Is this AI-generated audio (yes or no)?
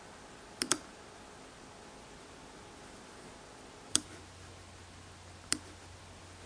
no